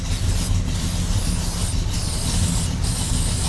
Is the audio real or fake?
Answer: real